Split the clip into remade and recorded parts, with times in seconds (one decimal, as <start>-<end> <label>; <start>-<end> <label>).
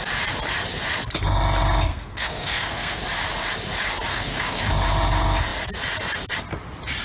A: 0.0-1.9 recorded; 1.9-3.0 remade; 3.0-4.1 recorded; 4.1-4.7 remade; 4.7-7.0 recorded